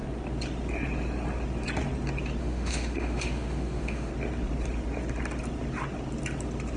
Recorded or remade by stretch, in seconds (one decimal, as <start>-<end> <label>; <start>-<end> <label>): 0.0-2.4 recorded; 2.4-4.1 remade; 4.1-6.8 recorded

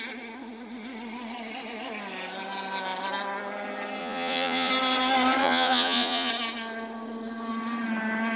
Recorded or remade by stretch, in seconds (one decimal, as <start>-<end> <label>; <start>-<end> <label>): 0.0-4.0 recorded; 4.0-4.7 remade; 4.7-5.4 recorded; 5.4-6.3 remade; 6.3-8.4 recorded

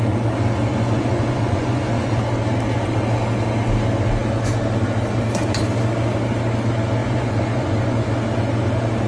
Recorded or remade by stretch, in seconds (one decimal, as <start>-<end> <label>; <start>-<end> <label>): 0.0-0.7 recorded; 0.7-2.2 remade; 2.2-7.0 recorded; 7.0-8.1 remade; 8.1-9.1 recorded

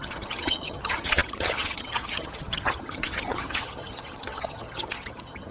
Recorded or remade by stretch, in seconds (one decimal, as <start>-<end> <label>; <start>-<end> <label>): 0.0-5.5 remade

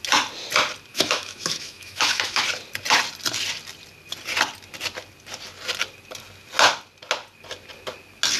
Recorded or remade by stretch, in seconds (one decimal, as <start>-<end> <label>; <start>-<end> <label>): 0.0-0.9 recorded; 0.9-2.4 remade; 2.4-8.4 recorded

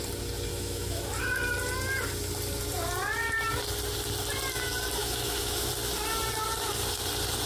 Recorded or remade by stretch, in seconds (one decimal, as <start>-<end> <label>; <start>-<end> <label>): 0.0-0.5 recorded; 0.5-1.1 remade; 1.1-5.0 recorded; 5.0-5.7 remade; 5.7-7.5 recorded

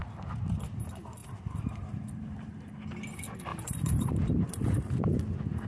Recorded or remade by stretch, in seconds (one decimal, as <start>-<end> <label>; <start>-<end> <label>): 0.0-1.2 recorded; 1.2-2.7 remade; 2.7-3.5 recorded; 3.5-5.2 remade; 5.2-5.7 recorded